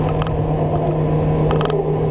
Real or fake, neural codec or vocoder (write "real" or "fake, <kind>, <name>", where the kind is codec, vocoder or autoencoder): real